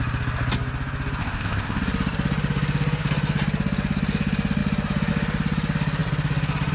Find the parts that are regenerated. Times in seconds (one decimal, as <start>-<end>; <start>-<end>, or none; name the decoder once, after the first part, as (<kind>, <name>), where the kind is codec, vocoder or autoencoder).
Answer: 1.2-1.8 (codec, ZipCodec)